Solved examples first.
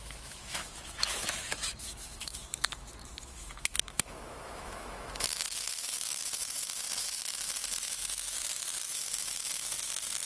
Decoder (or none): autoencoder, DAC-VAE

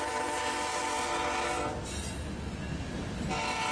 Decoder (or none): none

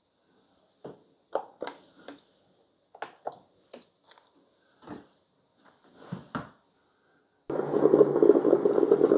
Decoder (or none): none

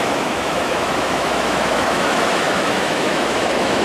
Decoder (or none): autoencoder, DAC-VAE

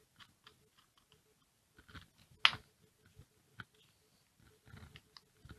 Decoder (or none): none